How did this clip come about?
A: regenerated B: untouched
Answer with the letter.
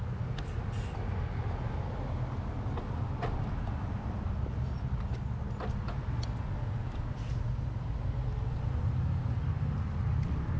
B